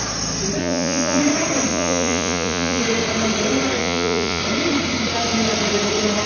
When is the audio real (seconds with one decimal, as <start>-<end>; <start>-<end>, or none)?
0.0-0.6; 1.2-1.7; 2.8-3.8; 4.4-6.3